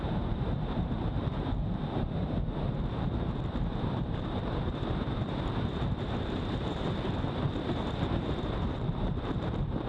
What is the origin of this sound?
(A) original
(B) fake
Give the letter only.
B